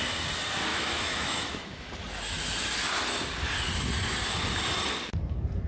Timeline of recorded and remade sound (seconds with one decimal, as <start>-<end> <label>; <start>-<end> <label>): 0.0-0.7 recorded; 0.7-1.9 remade; 1.9-5.7 recorded